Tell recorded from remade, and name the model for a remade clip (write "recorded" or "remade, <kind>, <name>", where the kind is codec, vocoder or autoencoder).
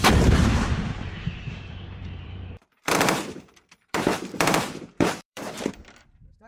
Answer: remade, vocoder, BigVGAN v2